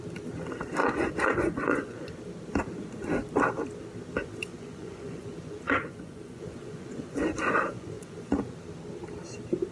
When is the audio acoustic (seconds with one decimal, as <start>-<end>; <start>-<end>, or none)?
0.0-0.8; 2.1-4.2; 8.3-9.7